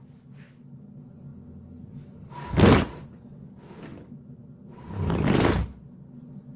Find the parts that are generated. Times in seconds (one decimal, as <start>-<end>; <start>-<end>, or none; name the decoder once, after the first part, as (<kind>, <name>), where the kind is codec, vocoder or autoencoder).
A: none